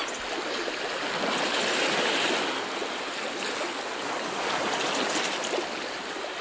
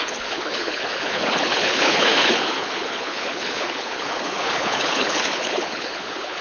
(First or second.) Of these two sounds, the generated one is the second